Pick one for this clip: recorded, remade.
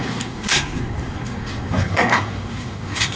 remade